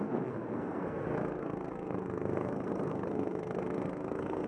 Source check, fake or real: fake